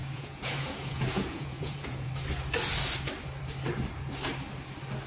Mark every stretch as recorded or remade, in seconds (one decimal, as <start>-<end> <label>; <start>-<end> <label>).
0.0-2.1 remade; 2.1-5.1 recorded